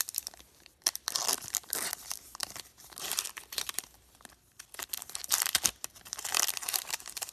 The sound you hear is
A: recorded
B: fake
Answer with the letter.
B